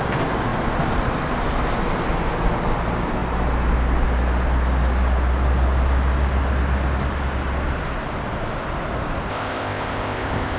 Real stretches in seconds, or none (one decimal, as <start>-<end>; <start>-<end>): 0.0-9.3